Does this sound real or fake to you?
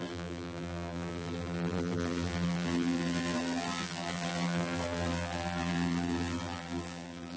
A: fake